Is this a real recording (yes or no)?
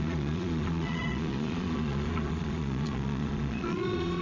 no